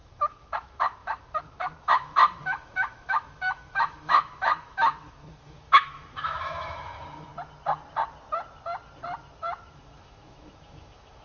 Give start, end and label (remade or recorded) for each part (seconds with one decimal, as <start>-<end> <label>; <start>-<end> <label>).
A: 0.0-7.3 remade; 7.3-9.7 recorded; 9.7-11.2 remade